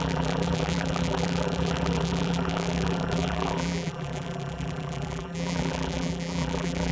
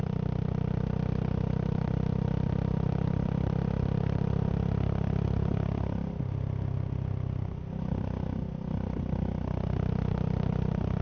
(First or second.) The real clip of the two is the second